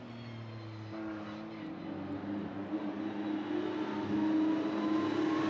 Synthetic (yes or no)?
no